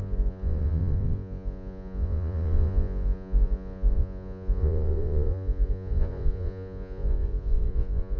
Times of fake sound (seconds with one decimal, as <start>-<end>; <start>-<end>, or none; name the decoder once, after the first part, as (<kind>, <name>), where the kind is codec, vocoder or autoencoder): 0.0-8.2 (vocoder, Vocos)